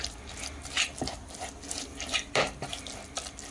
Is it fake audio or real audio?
real